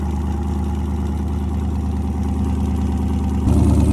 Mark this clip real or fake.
real